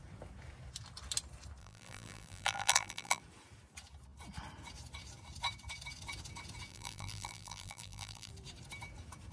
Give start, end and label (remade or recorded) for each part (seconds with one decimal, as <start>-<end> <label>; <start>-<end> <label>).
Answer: 0.0-1.6 recorded; 1.6-3.2 remade; 3.2-6.7 recorded; 6.7-8.3 remade; 8.3-9.3 recorded